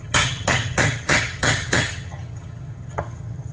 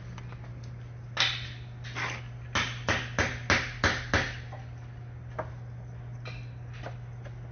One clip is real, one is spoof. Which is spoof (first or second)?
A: first